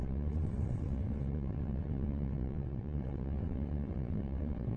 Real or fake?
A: fake